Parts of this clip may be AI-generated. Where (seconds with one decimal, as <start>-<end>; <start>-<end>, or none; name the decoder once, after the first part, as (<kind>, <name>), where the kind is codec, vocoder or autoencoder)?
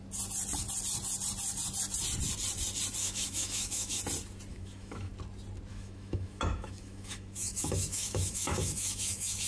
3.0-4.0 (autoencoder, DAC-VAE); 4.5-5.1; 5.7-9.5